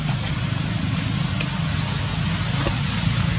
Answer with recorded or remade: recorded